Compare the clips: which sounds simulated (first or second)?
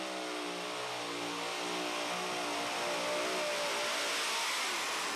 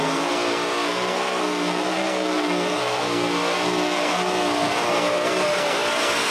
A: second